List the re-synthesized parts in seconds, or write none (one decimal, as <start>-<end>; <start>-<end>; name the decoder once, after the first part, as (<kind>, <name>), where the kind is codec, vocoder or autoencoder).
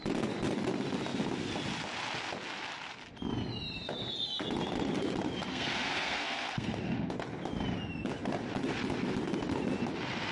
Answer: 5.5-6.8 (codec, SNAC)